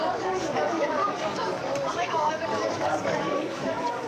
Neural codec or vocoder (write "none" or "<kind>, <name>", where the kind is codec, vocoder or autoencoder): codec, DAC